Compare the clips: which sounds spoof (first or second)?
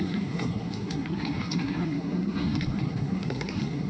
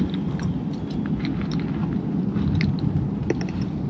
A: first